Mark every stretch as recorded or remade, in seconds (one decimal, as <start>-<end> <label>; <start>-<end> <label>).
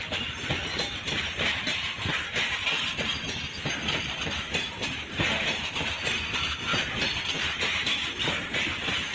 0.0-0.6 remade; 0.6-1.1 recorded; 1.1-9.1 remade